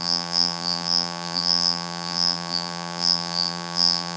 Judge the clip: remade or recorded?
remade